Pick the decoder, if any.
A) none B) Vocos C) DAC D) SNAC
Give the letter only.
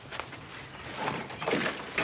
A